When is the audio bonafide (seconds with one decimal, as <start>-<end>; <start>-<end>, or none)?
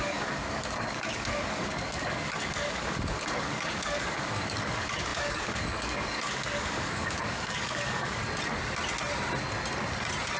8.2-10.4